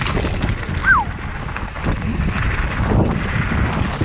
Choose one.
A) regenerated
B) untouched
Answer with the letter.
B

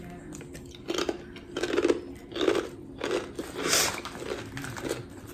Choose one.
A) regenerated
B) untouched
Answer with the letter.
B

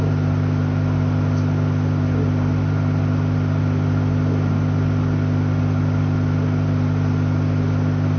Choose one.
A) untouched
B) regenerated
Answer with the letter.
A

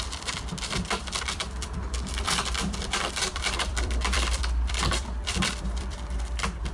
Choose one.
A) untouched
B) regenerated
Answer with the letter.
B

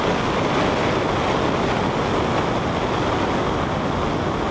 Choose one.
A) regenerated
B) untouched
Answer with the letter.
B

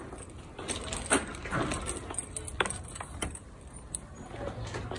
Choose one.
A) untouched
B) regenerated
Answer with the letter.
A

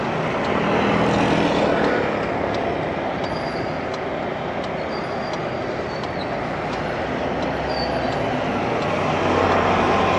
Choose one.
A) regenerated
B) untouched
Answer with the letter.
B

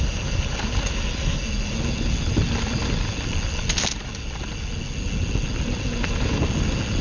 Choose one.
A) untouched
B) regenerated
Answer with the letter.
A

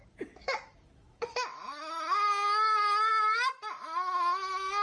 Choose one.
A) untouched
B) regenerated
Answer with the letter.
B